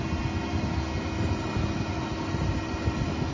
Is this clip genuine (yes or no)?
yes